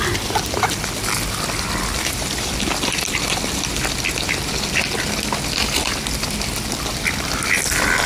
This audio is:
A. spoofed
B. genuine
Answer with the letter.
B